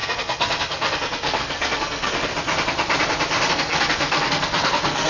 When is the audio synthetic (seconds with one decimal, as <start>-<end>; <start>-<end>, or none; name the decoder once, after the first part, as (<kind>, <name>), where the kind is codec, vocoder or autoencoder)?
0.0-2.3 (codec, SNAC); 3.5-5.1